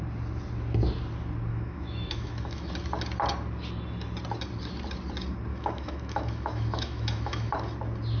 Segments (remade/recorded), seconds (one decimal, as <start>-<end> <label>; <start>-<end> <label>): 0.0-1.5 recorded; 1.5-2.7 remade; 2.7-5.5 recorded; 5.5-7.5 remade; 7.5-8.2 recorded